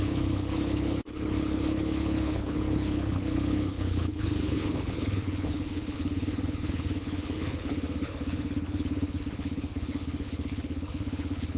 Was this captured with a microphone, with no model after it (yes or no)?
no